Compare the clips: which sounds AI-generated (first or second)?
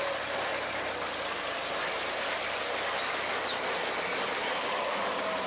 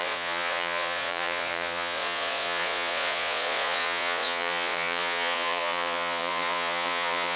second